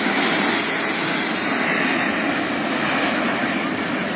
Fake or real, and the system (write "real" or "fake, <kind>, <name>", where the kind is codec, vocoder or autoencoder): real